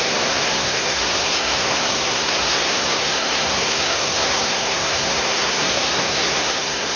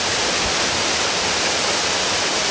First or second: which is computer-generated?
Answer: first